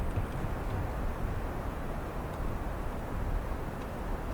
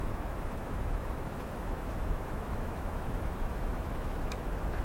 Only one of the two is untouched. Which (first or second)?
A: first